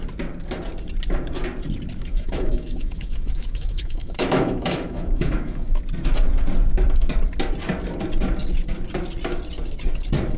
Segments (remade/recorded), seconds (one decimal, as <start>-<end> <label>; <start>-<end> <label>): 0.0-2.1 recorded; 2.1-5.8 remade; 5.8-10.4 recorded